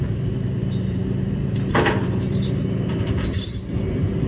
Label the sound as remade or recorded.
remade